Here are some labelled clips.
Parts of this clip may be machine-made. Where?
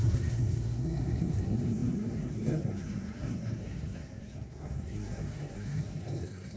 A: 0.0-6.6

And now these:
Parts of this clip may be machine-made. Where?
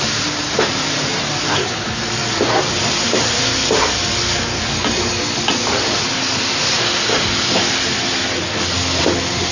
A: none